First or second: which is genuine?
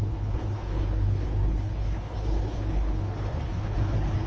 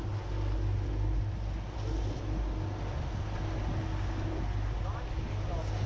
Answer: second